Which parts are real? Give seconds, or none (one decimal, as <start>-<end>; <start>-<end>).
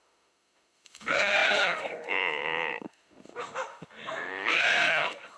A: none